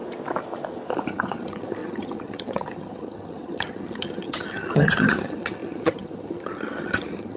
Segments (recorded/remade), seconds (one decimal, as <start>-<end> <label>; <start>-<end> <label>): 0.0-1.1 recorded; 1.1-7.4 remade